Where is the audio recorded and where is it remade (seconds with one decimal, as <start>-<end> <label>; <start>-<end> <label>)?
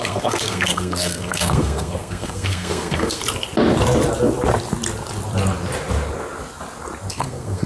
0.0-3.2 remade; 3.2-7.1 recorded; 7.1-7.7 remade